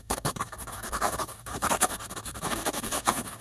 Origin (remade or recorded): remade